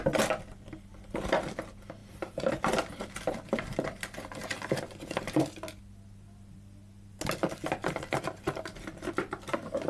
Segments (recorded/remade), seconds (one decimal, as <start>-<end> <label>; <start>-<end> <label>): 0.0-2.0 recorded; 2.0-2.5 remade; 2.5-4.4 recorded; 4.4-5.5 remade; 5.5-7.8 recorded; 7.8-8.7 remade; 8.7-9.9 recorded